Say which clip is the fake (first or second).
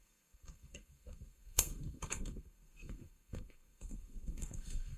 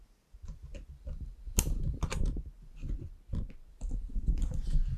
first